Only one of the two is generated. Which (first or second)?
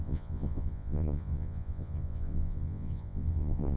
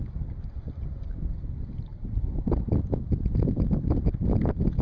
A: first